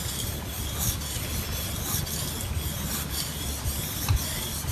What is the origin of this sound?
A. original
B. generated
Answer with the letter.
A